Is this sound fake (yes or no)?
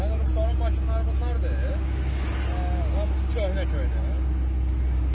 no